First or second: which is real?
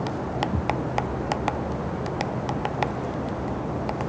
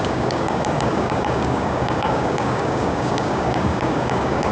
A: first